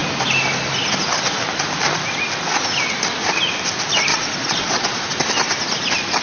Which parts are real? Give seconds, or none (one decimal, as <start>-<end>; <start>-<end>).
0.0-4.1; 5.2-6.2